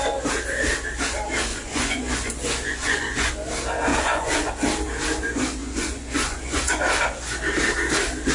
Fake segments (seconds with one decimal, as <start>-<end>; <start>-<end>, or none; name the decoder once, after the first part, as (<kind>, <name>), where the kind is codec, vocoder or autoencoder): 1.5-3.3 (vocoder, Vocos); 3.9-4.5; 5.6-6.8

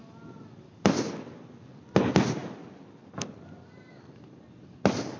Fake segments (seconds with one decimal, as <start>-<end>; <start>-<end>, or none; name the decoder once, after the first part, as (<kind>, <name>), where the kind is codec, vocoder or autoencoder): 2.4-3.8 (vocoder, BigVGAN v2)